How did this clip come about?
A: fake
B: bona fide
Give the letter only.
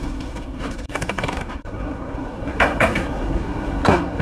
A